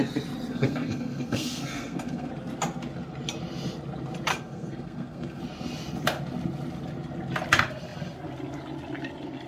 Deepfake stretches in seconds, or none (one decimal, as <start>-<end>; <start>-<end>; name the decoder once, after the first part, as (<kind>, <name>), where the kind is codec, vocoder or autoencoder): 0.5-2.3 (codec, SNAC); 4.3-5.4